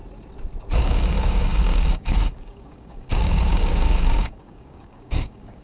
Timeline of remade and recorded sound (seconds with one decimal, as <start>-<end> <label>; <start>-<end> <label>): 0.0-0.8 recorded; 0.8-5.6 remade